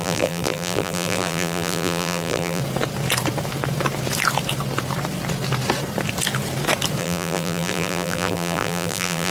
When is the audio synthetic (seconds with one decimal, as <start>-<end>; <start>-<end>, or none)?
0.0-2.6; 7.0-9.3